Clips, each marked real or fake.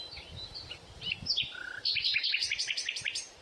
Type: real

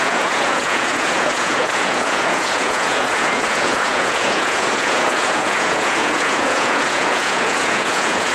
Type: fake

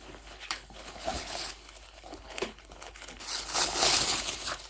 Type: fake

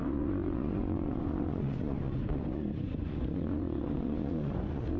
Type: fake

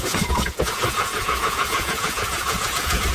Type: fake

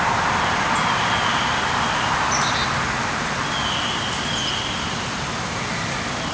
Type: real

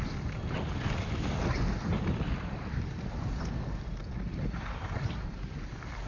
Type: real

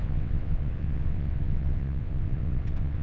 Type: fake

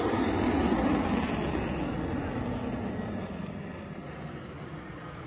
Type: real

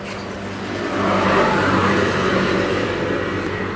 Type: real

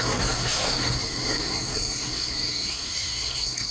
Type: fake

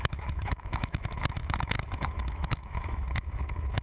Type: fake